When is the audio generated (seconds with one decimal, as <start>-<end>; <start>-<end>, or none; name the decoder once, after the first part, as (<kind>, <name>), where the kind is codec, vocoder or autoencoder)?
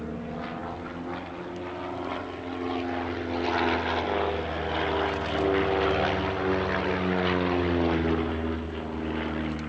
none